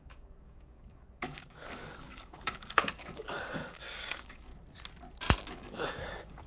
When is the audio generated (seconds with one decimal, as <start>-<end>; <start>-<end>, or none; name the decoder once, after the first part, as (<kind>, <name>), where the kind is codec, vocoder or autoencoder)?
0.0-4.5 (codec, DAC); 5.5-6.5